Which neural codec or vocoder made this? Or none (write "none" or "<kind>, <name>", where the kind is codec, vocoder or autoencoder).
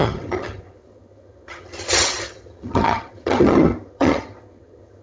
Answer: vocoder, HiFi-GAN